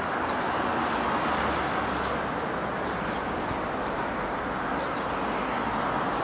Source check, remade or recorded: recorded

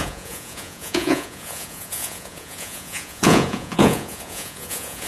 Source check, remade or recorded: remade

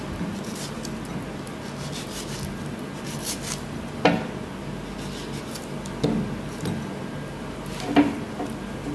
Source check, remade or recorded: recorded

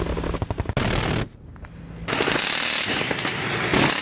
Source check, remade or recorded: recorded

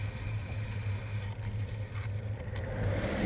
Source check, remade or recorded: recorded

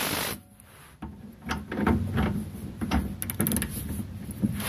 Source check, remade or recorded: recorded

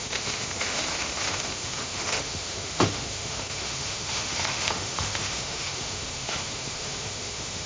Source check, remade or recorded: remade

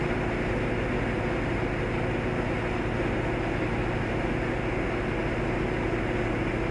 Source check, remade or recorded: recorded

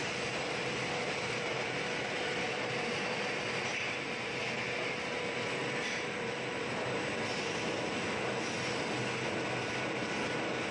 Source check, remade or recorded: recorded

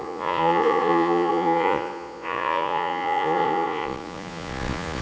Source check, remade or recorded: remade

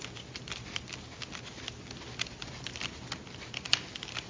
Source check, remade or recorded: recorded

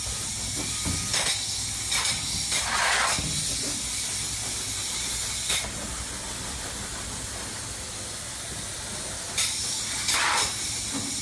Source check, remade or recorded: recorded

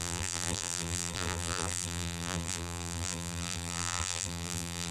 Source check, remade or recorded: remade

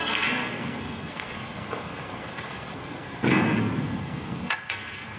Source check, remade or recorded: remade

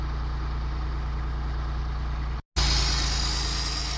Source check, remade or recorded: recorded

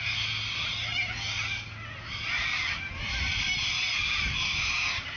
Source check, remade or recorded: recorded